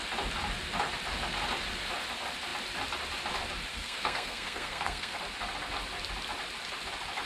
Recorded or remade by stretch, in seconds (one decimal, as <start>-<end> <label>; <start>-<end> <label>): 0.0-3.7 recorded; 3.7-5.2 remade; 5.2-7.3 recorded